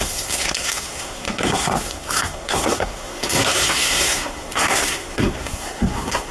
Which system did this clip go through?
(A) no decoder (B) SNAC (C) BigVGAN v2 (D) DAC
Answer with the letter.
B